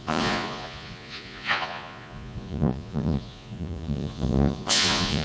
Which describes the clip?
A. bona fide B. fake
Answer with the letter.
B